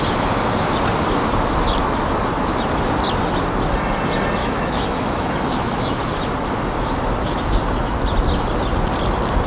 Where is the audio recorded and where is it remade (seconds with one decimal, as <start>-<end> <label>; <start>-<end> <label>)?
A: 0.0-4.4 recorded; 4.4-6.0 remade; 6.0-9.5 recorded